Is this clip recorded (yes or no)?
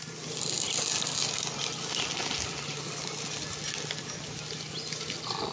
yes